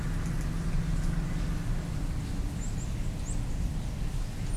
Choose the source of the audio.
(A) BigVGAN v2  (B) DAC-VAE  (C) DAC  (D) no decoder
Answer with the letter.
D